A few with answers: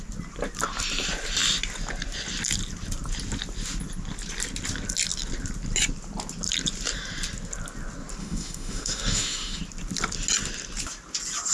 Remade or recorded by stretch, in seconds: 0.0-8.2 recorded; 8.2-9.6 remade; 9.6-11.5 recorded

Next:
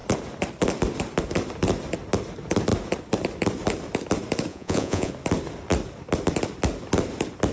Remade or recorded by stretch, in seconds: 0.0-4.5 recorded; 4.5-5.1 remade; 5.1-7.5 recorded

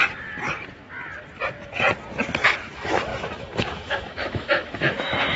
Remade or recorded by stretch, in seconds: 0.0-2.6 recorded; 2.6-5.4 remade

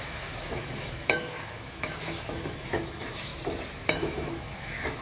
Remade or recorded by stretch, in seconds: 0.0-3.3 remade; 3.3-3.9 recorded; 3.9-5.0 remade

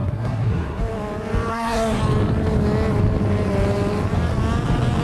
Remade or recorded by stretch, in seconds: 0.0-0.8 remade; 0.8-1.5 recorded; 1.5-2.0 remade; 2.0-5.0 recorded

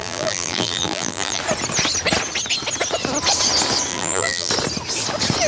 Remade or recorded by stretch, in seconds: 0.0-1.4 remade; 1.4-3.9 recorded; 3.9-4.5 remade; 4.5-5.5 recorded

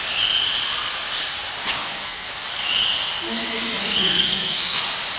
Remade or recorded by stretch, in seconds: 0.0-1.7 recorded; 1.7-2.3 remade; 2.3-3.8 recorded; 3.8-4.8 remade; 4.8-5.2 recorded

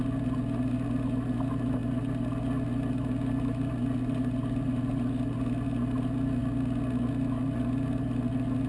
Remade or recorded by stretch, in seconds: 0.0-8.7 recorded